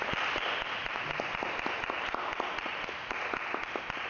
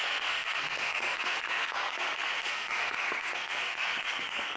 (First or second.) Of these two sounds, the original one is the first